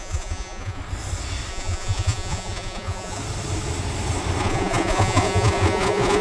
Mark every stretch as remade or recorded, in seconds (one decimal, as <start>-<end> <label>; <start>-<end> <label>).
0.0-0.8 remade; 0.8-1.5 recorded; 1.5-3.2 remade; 3.2-4.4 recorded; 4.4-6.2 remade